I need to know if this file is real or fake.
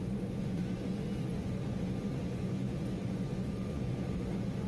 fake